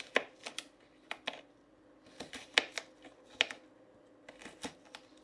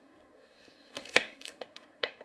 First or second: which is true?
first